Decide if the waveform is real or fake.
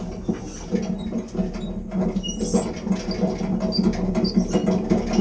real